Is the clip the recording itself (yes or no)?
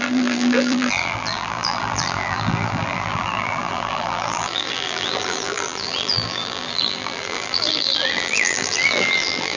no